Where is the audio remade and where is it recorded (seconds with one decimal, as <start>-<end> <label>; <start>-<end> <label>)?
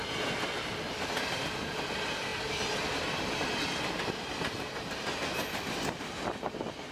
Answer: 0.0-6.9 recorded